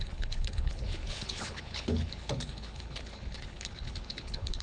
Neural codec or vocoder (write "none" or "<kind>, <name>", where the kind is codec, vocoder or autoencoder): codec, HILCodec